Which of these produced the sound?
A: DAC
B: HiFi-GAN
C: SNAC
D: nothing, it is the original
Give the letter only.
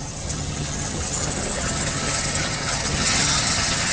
B